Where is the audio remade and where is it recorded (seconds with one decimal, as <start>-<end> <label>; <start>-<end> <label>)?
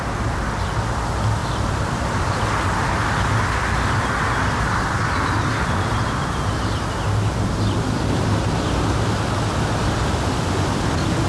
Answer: 0.0-1.4 recorded; 1.4-2.4 remade; 2.4-11.3 recorded